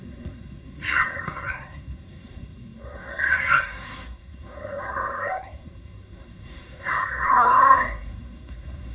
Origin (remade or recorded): remade